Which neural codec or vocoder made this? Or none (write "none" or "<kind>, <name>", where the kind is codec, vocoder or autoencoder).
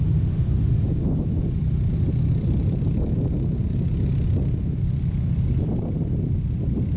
none